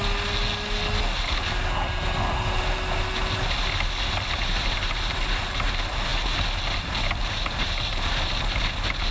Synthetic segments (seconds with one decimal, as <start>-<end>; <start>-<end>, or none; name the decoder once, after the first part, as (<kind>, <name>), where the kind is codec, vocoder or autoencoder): none